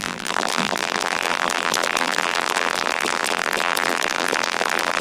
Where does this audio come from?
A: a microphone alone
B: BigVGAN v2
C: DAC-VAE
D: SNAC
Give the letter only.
B